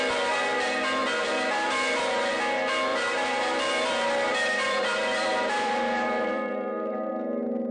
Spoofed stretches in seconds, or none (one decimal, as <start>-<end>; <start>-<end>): 1.0-2.3; 2.9-7.1